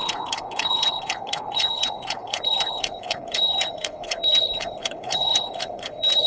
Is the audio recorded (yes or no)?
no